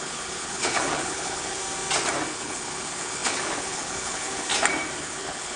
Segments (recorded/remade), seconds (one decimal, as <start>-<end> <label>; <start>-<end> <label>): 0.0-1.6 remade; 1.6-2.3 recorded; 2.3-4.5 remade; 4.5-5.0 recorded; 5.0-5.6 remade